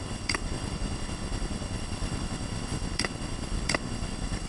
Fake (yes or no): yes